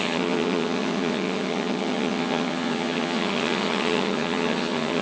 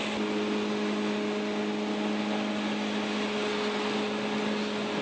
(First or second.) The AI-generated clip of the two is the first